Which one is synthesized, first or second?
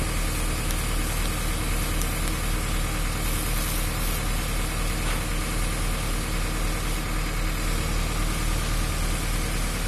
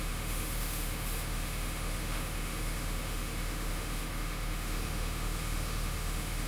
second